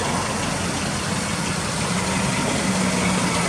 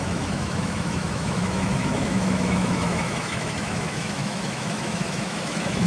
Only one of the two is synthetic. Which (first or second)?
second